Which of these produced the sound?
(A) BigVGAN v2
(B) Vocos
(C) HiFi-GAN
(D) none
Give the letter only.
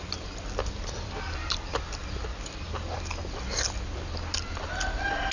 D